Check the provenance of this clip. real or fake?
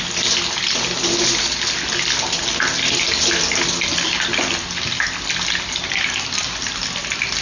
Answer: real